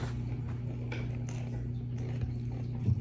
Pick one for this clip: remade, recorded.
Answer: recorded